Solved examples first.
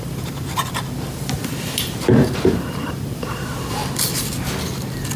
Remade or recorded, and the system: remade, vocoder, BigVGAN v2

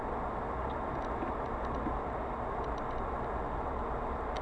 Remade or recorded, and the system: recorded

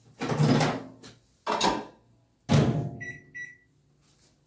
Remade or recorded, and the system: recorded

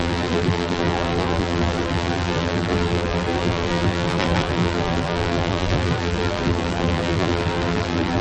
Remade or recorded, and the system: remade, vocoder, BigVGAN v2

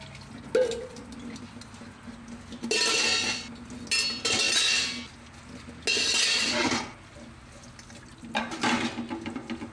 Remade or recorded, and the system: recorded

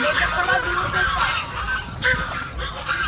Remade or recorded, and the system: remade, vocoder, BigVGAN v2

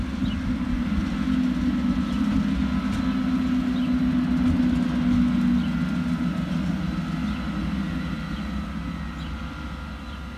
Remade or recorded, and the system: recorded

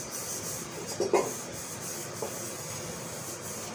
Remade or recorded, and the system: recorded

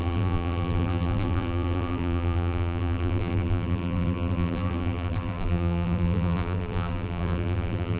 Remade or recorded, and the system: remade, vocoder, BigVGAN v2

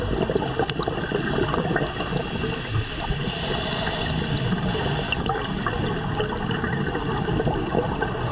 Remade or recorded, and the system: recorded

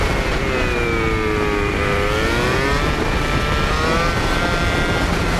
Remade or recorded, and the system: recorded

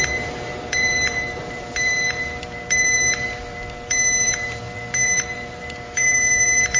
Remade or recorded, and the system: remade, vocoder, BigVGAN v2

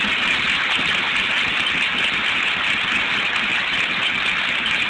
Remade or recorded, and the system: recorded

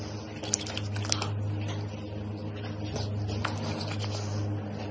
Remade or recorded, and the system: recorded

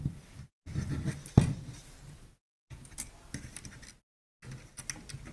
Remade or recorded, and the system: recorded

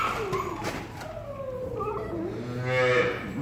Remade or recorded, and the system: recorded